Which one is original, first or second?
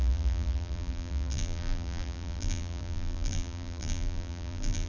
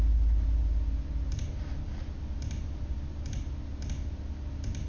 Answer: second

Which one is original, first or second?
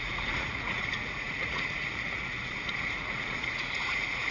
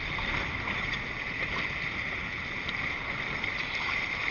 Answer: second